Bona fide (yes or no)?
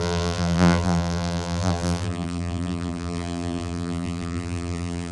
no